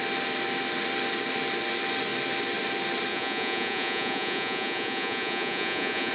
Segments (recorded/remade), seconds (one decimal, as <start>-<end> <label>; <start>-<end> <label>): 0.0-3.1 recorded; 3.1-6.1 remade